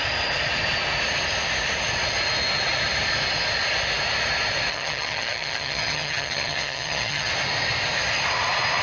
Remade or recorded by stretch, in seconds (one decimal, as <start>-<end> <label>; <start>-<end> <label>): 0.0-4.7 recorded; 4.7-7.3 remade; 7.3-8.8 recorded